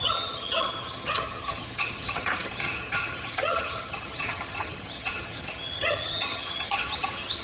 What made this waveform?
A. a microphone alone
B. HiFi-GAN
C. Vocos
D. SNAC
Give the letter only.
B